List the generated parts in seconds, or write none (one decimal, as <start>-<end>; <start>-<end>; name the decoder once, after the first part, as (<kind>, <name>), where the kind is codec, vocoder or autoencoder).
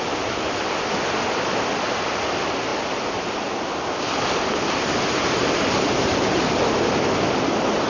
none